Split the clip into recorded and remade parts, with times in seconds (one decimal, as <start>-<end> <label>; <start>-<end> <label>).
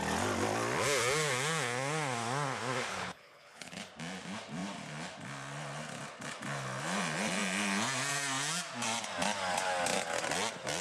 0.0-2.9 recorded; 2.9-3.9 remade; 3.9-10.8 recorded